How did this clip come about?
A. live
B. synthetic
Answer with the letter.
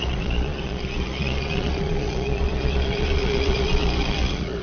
B